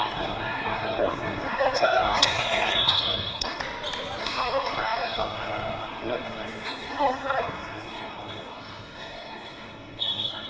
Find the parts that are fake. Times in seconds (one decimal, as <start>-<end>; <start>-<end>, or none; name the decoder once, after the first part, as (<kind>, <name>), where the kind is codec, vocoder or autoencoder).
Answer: 0.0-3.6 (codec, SNAC); 4.2-10.5